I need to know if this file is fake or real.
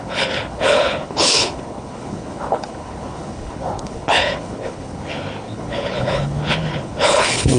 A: fake